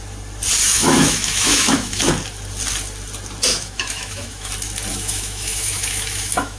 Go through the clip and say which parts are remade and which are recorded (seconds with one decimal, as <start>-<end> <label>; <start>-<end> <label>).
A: 0.0-0.6 recorded; 0.6-2.1 remade; 2.1-3.5 recorded; 3.5-4.5 remade; 4.5-4.9 recorded; 4.9-6.6 remade